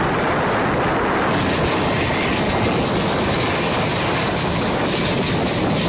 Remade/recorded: recorded